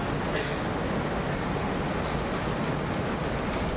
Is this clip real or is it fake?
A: real